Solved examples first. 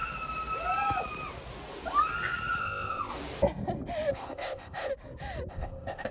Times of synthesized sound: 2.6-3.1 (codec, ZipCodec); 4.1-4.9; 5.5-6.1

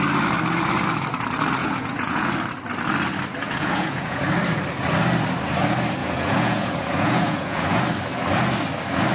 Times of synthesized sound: 1.6-2.3 (vocoder, Vocos); 3.4-4.2; 6.0-7.8

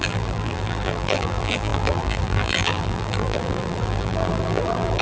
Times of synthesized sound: 0.0-5.0 (vocoder, BigVGAN v2)

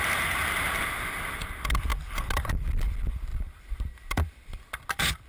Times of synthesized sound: none